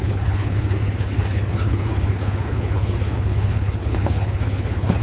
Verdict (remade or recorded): remade